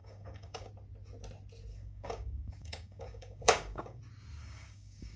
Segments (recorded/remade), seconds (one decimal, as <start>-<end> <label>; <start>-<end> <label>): 0.0-0.7 remade; 0.7-1.7 recorded; 1.7-4.0 remade; 4.0-4.4 recorded; 4.4-5.2 remade